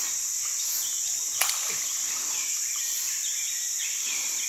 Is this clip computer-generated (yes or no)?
no